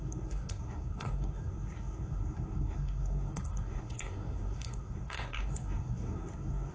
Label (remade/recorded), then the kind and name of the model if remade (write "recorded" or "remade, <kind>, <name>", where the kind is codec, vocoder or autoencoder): remade, codec, SNAC